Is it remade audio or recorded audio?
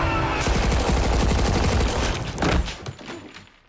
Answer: recorded